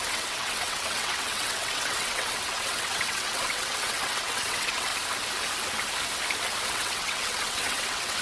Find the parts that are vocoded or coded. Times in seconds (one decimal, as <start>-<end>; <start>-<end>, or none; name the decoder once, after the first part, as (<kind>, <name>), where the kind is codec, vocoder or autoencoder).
0.0-4.9 (vocoder, WaveNeXt); 6.7-8.2

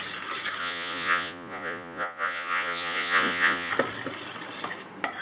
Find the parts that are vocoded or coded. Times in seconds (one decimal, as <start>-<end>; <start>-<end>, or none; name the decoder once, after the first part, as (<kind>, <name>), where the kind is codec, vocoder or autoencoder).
0.6-3.7 (vocoder, Vocos)

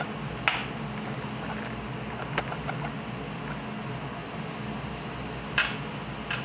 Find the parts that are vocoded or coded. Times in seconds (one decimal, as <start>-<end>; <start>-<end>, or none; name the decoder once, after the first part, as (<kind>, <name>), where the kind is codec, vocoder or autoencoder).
none

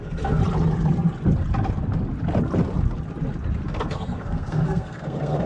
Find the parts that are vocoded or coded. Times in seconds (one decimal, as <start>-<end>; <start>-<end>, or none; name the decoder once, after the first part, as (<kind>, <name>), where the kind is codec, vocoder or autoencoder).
0.0-0.4 (codec, SNAC); 3.7-5.5

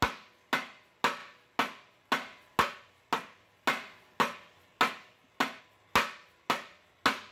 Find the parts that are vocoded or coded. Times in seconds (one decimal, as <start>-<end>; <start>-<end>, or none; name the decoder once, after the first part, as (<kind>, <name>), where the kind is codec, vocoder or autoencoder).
none

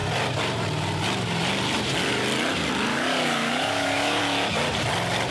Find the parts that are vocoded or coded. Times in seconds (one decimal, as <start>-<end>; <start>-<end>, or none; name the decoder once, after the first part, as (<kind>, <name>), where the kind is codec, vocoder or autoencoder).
2.9-4.2 (codec, DAC)